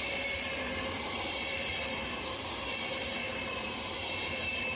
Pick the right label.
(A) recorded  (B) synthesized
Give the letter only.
A